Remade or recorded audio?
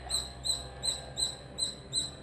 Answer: recorded